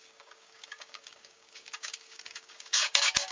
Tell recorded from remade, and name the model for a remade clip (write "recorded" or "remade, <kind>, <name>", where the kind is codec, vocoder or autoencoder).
remade, codec, DAC